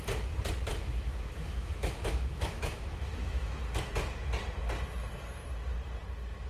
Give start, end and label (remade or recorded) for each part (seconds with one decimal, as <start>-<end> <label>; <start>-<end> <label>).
0.0-0.7 recorded; 0.7-3.6 remade; 3.6-6.5 recorded

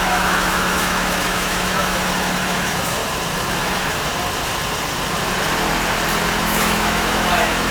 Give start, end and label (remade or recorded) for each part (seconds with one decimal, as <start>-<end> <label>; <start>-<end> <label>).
0.0-3.0 remade; 3.0-3.6 recorded; 3.6-4.1 remade; 4.1-6.4 recorded; 6.4-7.7 remade

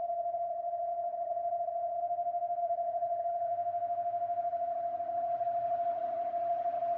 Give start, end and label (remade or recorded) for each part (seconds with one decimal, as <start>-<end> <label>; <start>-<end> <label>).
0.0-2.0 remade; 2.0-2.6 recorded; 2.6-3.5 remade; 3.5-4.4 recorded; 4.4-7.0 remade

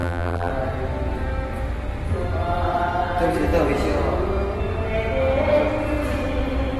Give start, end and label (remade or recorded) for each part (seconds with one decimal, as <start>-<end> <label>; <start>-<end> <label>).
0.0-0.5 remade; 0.5-6.8 recorded